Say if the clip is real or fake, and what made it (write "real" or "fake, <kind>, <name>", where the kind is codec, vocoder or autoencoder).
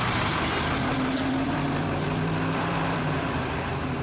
fake, vocoder, BigVGAN v2